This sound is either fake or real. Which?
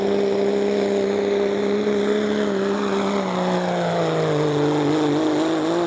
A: real